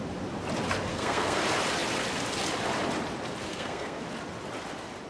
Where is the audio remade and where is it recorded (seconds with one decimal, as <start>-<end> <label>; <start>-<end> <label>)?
0.0-0.9 recorded; 0.9-1.4 remade; 1.4-3.5 recorded; 3.5-4.0 remade; 4.0-5.1 recorded